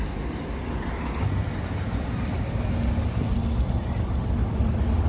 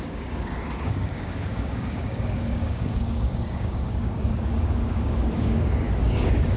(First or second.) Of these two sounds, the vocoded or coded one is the second